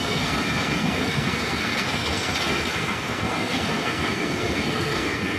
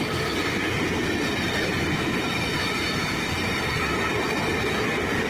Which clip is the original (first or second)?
second